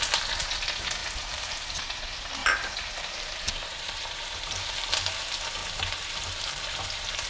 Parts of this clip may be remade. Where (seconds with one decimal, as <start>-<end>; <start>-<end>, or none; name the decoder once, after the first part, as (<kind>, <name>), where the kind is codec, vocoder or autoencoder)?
1.0-1.8 (vocoder, BigVGAN v2); 2.4-5.0; 5.6-6.6

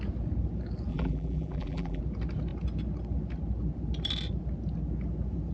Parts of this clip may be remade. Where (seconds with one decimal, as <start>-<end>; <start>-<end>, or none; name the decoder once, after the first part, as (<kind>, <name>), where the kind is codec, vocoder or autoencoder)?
0.9-2.0 (vocoder, BigVGAN v2)

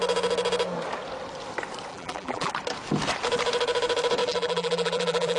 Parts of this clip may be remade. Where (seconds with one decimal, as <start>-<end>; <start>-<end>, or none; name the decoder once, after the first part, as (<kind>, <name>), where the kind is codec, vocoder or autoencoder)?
1.9-2.5 (vocoder, BigVGAN v2); 4.2-5.4

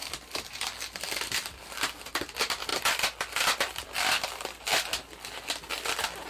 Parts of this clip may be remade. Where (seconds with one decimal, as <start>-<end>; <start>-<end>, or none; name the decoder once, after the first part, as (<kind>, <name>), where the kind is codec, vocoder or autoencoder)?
0.0-1.6 (vocoder, BigVGAN v2)

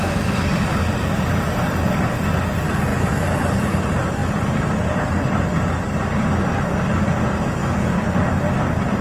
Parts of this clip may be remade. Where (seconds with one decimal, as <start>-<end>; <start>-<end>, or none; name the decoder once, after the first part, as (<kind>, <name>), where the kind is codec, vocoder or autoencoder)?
7.6-8.2 (vocoder, BigVGAN v2)

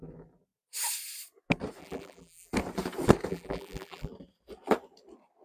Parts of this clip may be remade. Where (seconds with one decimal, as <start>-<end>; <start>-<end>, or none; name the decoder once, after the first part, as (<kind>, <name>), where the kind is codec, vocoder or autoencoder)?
1.8-2.5 (vocoder, BigVGAN v2); 3.3-4.1

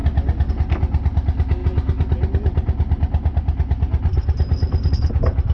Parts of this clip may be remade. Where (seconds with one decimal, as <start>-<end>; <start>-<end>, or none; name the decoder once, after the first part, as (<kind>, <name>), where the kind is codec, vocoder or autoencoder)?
none